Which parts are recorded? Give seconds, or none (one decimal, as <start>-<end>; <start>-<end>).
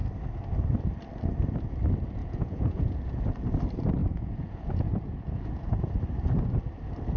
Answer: 0.0-2.2; 3.2-4.0; 5.9-7.2